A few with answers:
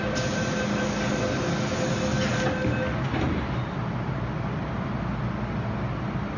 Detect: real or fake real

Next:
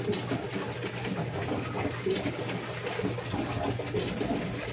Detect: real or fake real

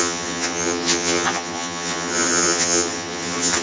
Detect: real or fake fake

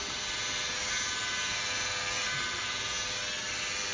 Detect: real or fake real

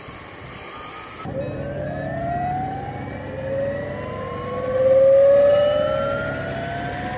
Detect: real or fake real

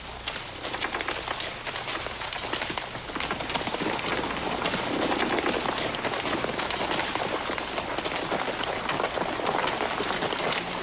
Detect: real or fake real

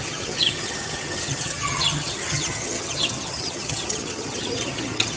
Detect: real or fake fake